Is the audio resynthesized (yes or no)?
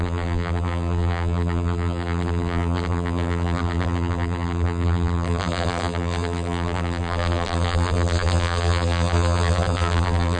yes